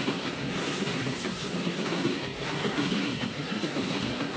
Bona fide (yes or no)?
no